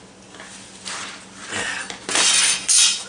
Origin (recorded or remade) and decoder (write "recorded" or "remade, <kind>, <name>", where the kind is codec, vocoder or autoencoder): recorded